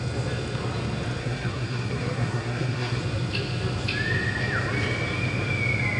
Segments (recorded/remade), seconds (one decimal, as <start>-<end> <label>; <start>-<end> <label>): 0.0-1.2 recorded; 1.2-3.0 remade; 3.0-6.0 recorded